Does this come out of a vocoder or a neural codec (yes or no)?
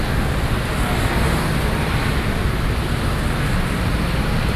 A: no